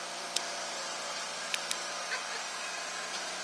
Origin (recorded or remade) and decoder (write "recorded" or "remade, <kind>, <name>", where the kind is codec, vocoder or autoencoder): recorded